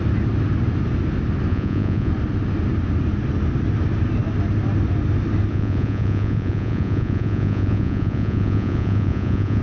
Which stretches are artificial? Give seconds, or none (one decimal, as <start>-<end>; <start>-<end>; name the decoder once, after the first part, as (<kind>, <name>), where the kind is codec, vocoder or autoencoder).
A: 1.5-2.1 (vocoder, Vocos); 5.5-9.6